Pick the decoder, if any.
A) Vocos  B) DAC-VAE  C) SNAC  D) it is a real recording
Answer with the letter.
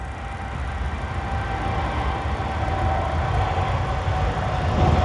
D